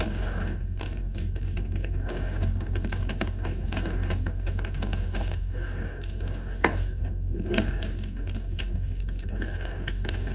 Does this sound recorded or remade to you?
remade